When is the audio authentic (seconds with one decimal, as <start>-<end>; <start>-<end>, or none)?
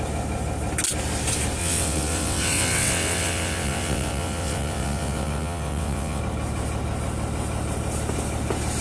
0.0-1.6; 6.2-8.8